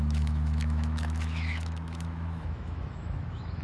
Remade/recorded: remade